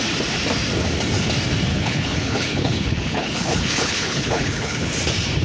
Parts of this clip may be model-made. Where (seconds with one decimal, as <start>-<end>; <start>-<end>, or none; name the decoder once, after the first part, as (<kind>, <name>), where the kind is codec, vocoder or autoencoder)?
1.7-4.9 (codec, HILCodec)